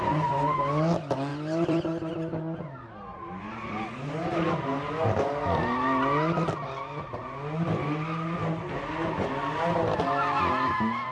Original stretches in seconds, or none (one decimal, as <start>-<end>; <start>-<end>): 0.0-1.3; 2.1-11.1